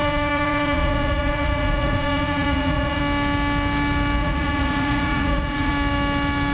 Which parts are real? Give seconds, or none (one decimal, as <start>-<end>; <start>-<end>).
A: 3.0-4.2; 5.7-6.5